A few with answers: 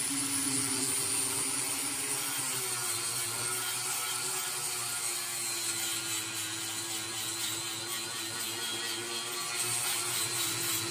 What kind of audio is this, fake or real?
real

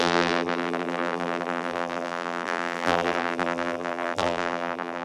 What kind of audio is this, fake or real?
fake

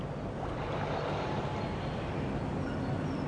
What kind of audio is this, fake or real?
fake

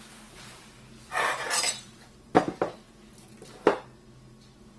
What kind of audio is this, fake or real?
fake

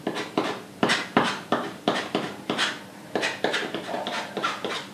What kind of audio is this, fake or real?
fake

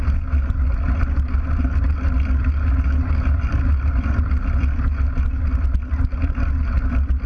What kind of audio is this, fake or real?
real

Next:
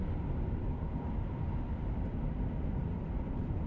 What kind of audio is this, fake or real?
fake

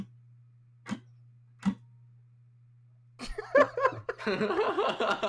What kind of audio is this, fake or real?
real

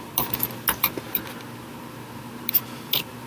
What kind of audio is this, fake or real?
real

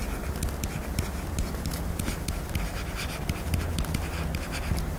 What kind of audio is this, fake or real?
real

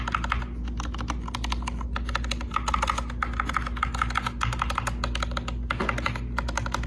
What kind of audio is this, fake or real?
real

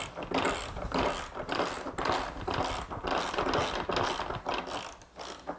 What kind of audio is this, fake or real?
real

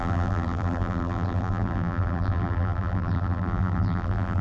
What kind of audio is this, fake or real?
fake